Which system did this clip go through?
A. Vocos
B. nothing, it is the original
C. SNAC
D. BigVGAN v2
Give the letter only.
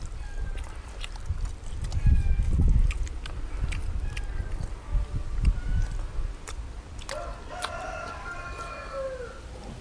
B